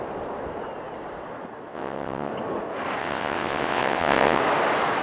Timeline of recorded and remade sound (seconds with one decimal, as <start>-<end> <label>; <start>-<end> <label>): 0.0-1.7 recorded; 1.7-2.3 remade; 2.3-3.0 recorded; 3.0-4.4 remade; 4.4-5.0 recorded